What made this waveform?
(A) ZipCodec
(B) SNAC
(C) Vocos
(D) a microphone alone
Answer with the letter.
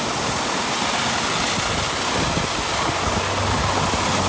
D